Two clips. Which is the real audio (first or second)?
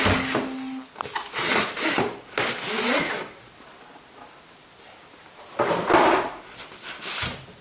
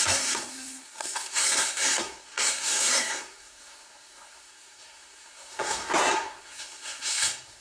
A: first